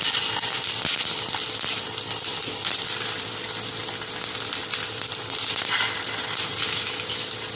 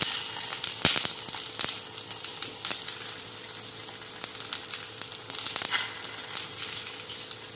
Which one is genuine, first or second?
second